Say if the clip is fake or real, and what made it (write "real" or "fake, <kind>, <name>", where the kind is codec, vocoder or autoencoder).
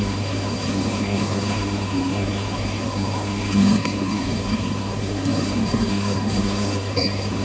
fake, codec, SNAC